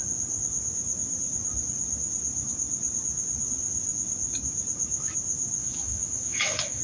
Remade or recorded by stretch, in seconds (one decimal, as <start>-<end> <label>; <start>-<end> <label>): 0.0-5.6 recorded; 5.6-6.8 remade